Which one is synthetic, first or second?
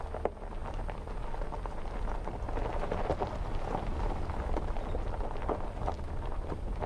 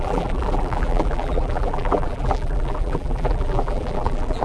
second